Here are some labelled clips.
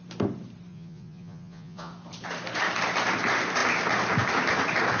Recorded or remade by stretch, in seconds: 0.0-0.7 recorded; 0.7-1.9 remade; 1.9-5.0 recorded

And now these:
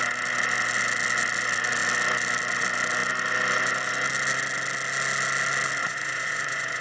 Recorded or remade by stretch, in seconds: 0.0-5.8 recorded; 5.8-6.8 remade

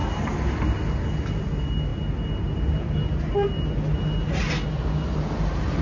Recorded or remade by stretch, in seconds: 0.0-5.8 recorded

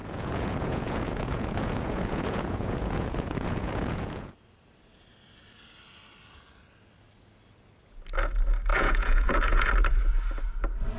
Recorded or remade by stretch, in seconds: 0.0-4.3 remade; 4.3-8.7 recorded; 8.7-9.7 remade; 9.7-11.0 recorded

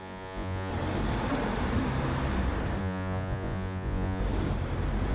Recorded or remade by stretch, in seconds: 0.0-0.7 remade; 0.7-2.8 recorded; 2.8-4.2 remade; 4.2-5.1 recorded

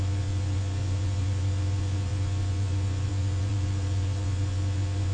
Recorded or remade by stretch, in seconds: 0.0-5.1 remade

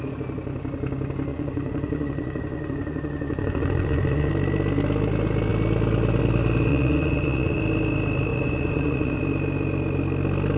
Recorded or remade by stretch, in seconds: 0.0-1.3 recorded; 1.3-4.3 remade; 4.3-6.7 recorded; 6.7-7.6 remade; 7.6-8.3 recorded; 8.3-9.2 remade; 9.2-10.6 recorded